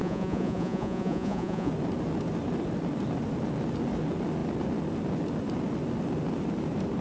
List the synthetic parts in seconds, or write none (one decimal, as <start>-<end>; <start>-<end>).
0.0-1.7